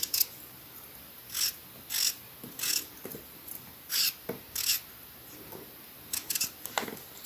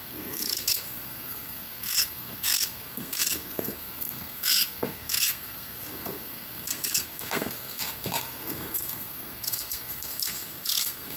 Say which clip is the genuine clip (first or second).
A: first